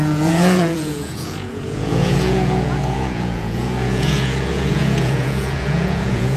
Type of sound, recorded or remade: remade